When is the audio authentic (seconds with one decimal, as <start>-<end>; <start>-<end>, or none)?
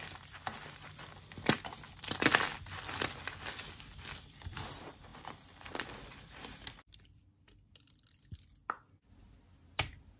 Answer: 0.0-5.1; 7.2-10.2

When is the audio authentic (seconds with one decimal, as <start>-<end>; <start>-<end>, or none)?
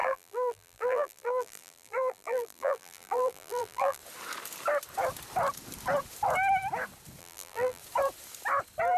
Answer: 4.0-7.2; 7.8-9.0